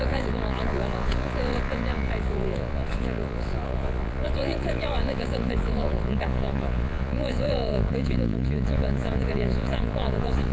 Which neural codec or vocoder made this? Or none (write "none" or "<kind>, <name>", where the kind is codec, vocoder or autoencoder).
vocoder, Vocos